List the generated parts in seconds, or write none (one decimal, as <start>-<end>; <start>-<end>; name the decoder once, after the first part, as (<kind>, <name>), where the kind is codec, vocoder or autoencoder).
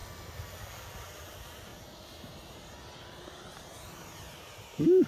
1.7-5.1 (vocoder, BigVGAN v2)